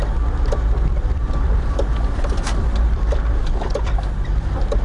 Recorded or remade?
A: remade